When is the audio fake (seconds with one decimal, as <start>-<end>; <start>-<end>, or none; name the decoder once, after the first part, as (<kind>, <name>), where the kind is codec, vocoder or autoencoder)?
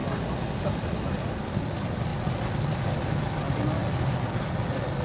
none